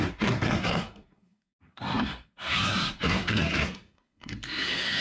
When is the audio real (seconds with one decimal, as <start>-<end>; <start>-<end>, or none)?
none